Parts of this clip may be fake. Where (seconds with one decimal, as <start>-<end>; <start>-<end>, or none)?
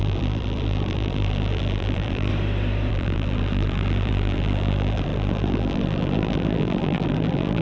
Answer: 0.0-2.3; 2.9-7.6